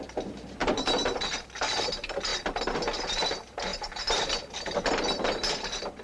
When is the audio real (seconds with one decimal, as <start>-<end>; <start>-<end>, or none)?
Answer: 2.3-3.0